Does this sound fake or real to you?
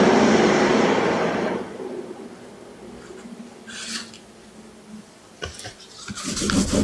real